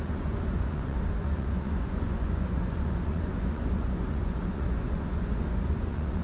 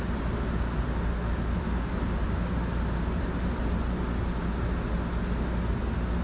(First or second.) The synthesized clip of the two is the first